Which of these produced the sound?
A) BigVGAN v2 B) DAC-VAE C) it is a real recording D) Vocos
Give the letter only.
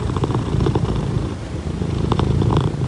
A